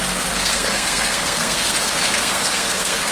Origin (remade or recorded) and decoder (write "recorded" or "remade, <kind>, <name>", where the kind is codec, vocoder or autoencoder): remade, codec, SNAC